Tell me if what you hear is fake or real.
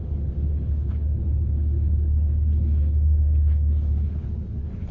fake